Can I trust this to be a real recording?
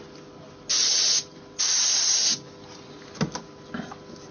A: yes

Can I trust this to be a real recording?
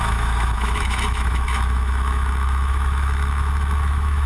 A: no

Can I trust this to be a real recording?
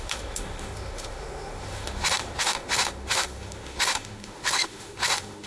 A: no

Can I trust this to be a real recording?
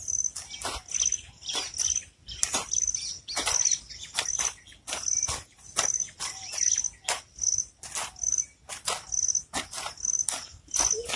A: yes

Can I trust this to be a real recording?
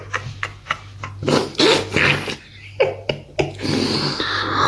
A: yes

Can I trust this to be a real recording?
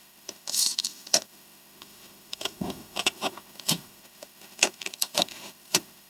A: no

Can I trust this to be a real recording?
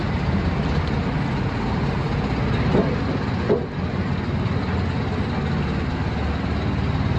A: yes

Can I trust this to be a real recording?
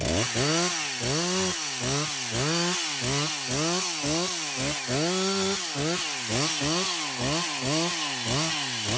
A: yes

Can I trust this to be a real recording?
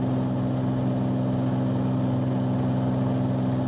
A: yes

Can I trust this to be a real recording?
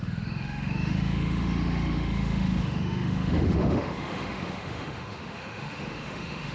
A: no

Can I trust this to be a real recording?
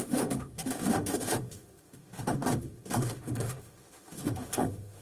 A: no